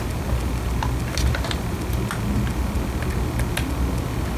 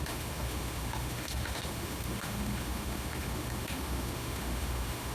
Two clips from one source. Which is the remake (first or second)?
second